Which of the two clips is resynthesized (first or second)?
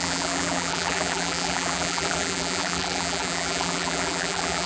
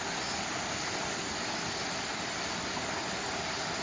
first